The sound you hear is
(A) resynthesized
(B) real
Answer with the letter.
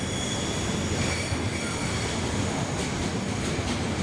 B